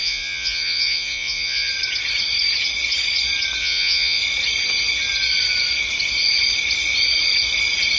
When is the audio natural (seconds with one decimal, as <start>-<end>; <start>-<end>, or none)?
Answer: 1.7-3.6; 4.2-8.0